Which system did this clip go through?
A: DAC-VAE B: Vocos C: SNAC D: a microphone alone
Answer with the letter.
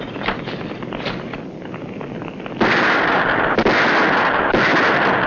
D